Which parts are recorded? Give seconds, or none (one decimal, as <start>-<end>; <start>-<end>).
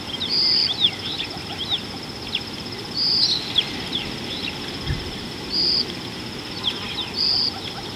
0.0-0.6; 1.4-8.0